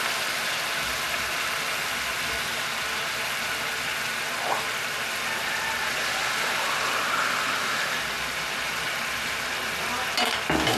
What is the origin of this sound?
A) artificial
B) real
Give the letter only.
B